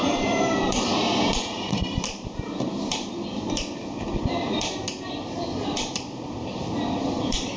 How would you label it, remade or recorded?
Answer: remade